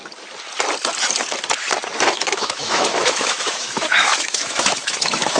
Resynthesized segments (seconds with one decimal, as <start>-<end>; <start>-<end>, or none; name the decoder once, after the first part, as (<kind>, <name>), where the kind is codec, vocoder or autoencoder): 2.1-5.4 (autoencoder, DAC-VAE)